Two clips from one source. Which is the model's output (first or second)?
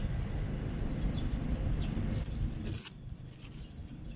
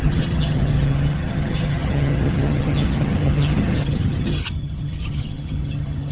second